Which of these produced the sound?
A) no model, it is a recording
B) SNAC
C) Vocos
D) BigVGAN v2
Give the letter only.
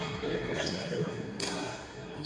B